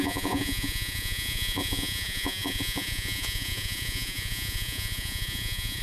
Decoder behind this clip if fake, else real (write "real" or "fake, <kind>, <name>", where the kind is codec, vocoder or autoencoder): fake, vocoder, Vocos